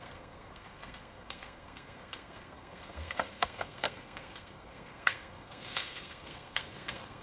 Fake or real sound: fake